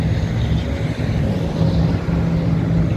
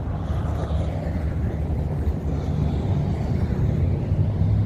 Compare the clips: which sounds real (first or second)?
first